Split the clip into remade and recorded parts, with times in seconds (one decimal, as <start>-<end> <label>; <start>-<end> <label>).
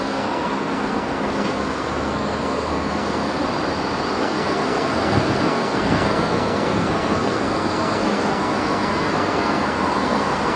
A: 0.0-3.4 remade; 3.4-4.2 recorded; 4.2-10.6 remade